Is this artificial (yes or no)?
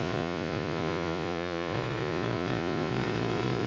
yes